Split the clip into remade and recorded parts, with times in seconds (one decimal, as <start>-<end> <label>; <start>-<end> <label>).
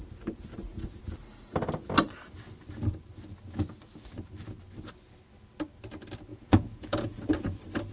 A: 0.0-6.3 recorded; 6.3-7.2 remade; 7.2-7.9 recorded